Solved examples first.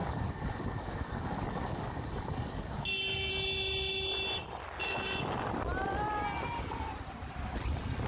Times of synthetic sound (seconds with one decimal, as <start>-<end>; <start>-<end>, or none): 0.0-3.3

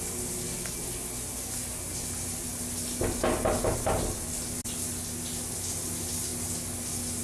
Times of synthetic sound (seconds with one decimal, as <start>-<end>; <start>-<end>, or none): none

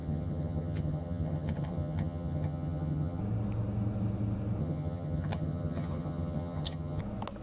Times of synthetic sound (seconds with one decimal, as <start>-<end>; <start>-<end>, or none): 0.0-3.2; 4.6-7.0

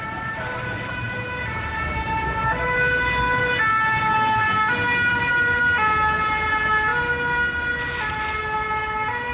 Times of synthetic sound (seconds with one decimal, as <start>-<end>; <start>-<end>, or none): 0.0-4.4; 5.1-6.9; 8.4-9.3

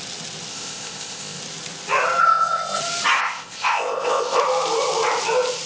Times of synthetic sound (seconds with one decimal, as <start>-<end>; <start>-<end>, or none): 0.5-1.4; 2.2-2.8; 3.2-4.4